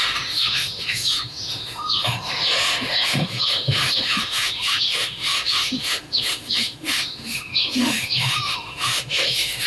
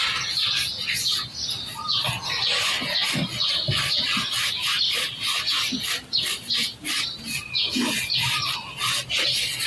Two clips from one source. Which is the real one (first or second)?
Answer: second